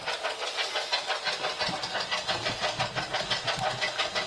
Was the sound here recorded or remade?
recorded